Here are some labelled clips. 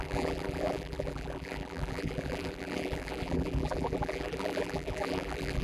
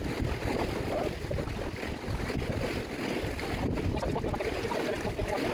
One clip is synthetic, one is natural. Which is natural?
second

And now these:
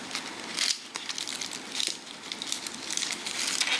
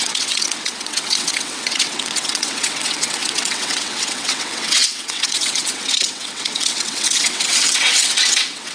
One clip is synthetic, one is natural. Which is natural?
first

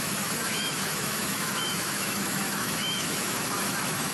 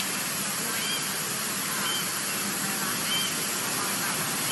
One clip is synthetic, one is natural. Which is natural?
second